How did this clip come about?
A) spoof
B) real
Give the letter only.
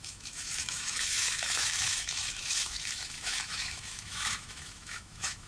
A